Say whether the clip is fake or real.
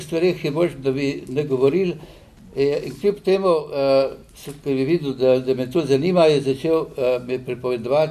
real